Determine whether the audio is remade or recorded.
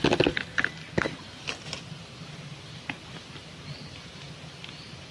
recorded